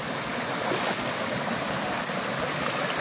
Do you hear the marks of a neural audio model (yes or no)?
no